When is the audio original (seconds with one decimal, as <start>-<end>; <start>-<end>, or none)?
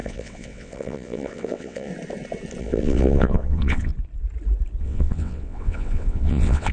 1.9-2.6; 3.9-4.8